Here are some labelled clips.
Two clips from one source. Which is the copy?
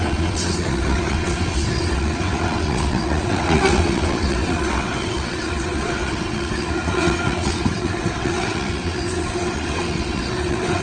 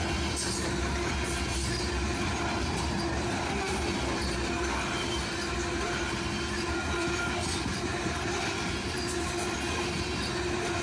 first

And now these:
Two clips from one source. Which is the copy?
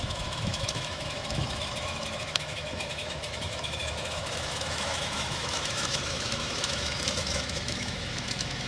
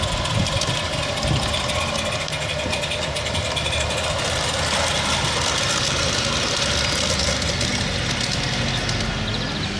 first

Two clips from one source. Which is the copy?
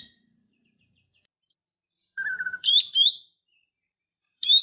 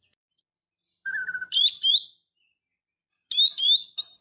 first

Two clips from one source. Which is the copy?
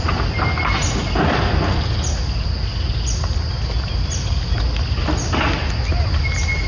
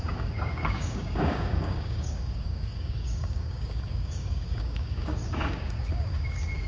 second